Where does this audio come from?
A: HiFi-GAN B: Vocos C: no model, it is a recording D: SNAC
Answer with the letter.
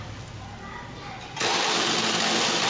C